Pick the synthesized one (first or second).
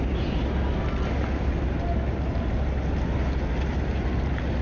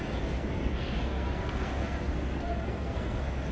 second